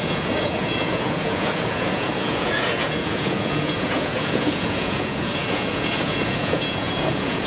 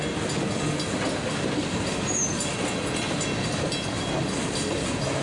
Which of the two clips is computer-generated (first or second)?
first